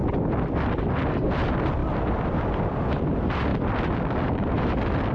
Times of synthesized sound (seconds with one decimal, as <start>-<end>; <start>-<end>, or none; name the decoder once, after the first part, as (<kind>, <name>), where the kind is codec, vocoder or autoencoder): 0.0-5.1 (vocoder, BigVGAN v2)